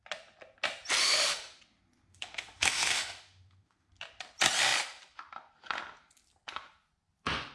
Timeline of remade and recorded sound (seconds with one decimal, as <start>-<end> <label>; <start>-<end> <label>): 0.0-1.0 recorded; 1.0-1.6 remade; 1.6-2.1 recorded; 2.1-3.9 remade; 3.9-7.5 recorded